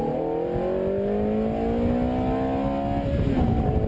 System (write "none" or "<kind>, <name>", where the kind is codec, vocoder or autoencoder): none